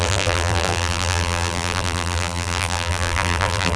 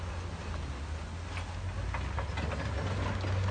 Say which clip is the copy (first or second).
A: first